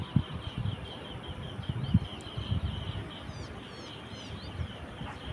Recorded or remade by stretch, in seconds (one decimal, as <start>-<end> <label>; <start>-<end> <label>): 0.0-2.1 remade; 2.1-5.3 recorded